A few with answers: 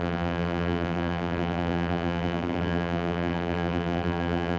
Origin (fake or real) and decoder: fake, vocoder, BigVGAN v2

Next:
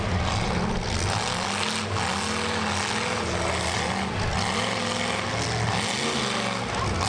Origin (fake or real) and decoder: real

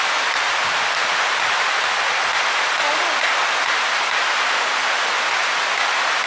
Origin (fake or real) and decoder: real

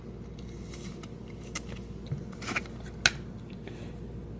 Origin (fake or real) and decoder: real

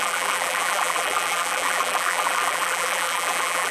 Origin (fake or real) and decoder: fake, vocoder, BigVGAN v2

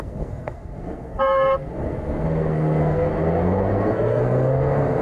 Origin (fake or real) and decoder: fake, codec, SNAC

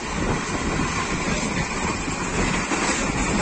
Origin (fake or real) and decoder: real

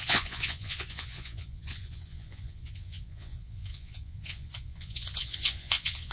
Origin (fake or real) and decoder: fake, vocoder, Vocos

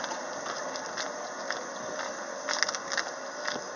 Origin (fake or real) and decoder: real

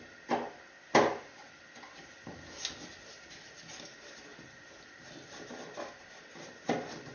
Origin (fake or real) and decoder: real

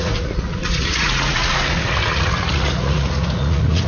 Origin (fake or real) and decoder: fake, vocoder, Vocos